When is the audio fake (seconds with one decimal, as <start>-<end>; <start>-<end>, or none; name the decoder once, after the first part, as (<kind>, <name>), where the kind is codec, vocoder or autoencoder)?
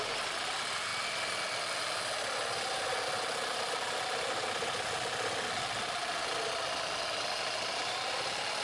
none